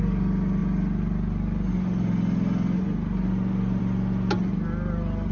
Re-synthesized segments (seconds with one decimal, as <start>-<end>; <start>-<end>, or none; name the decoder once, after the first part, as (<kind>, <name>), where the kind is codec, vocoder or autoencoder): none